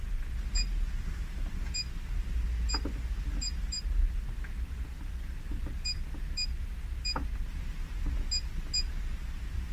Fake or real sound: real